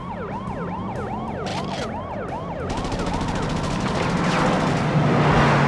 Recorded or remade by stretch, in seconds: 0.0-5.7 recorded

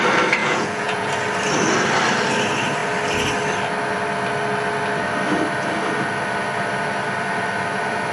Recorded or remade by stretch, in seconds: 0.0-0.4 recorded; 0.4-1.1 remade; 1.1-8.1 recorded

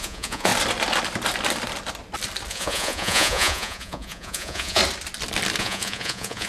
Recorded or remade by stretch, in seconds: 0.0-0.5 remade; 0.5-2.5 recorded; 2.5-4.8 remade; 4.8-5.6 recorded; 5.6-6.5 remade

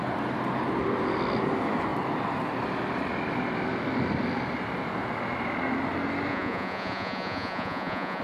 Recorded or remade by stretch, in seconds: 0.0-6.3 recorded; 6.3-8.2 remade

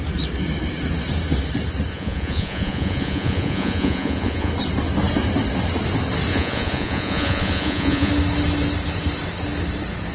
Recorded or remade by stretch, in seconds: 0.0-1.9 recorded; 1.9-4.5 remade; 4.5-6.3 recorded; 6.3-8.1 remade; 8.1-10.1 recorded

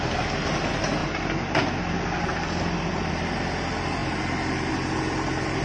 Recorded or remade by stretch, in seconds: 0.0-5.6 recorded

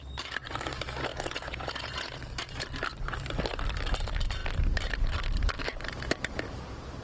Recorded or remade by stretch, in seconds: 0.0-1.1 recorded; 1.1-2.2 remade; 2.2-7.0 recorded

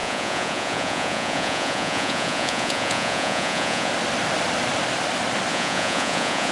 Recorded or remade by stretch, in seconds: 0.0-3.9 remade; 3.9-5.5 recorded; 5.5-6.5 remade